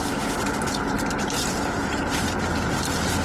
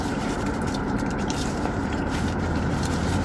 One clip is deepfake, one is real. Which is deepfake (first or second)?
second